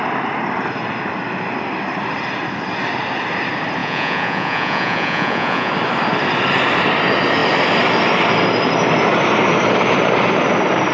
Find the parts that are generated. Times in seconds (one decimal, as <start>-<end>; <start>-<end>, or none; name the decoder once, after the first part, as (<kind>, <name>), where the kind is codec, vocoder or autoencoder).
3.8-5.7 (vocoder, Vocos)